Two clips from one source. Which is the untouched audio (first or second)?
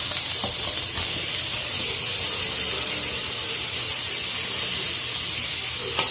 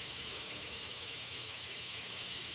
first